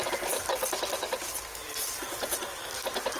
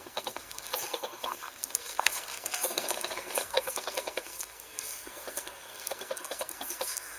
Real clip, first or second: first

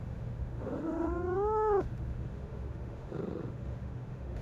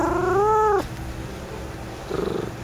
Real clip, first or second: second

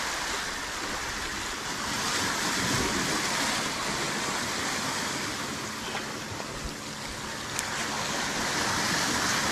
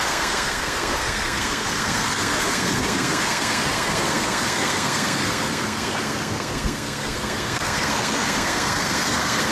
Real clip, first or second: first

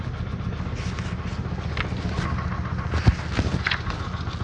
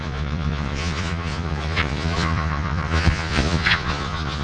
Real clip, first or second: first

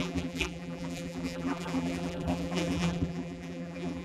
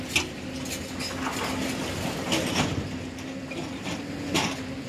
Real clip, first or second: second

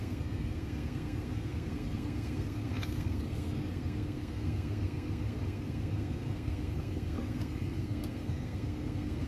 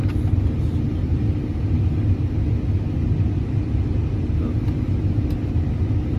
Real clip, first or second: second